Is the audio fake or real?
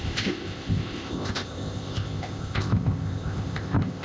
fake